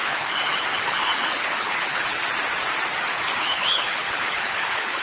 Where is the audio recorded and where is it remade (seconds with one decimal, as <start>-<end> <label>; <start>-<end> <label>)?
0.0-2.2 remade; 2.2-3.3 recorded; 3.3-5.0 remade

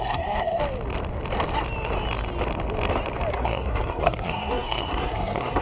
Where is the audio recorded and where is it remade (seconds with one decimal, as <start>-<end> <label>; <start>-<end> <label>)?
0.0-0.6 remade; 0.6-3.3 recorded; 3.3-5.6 remade

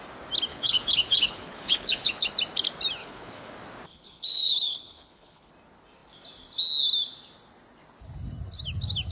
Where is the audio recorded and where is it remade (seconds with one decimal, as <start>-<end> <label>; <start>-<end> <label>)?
0.0-0.5 recorded; 0.5-2.3 remade; 2.3-3.0 recorded; 3.0-3.5 remade; 3.5-3.9 recorded; 3.9-5.5 remade; 5.5-9.1 recorded